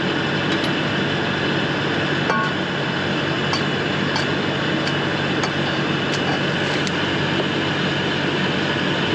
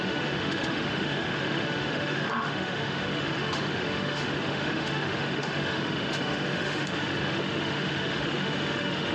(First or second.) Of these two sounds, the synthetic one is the second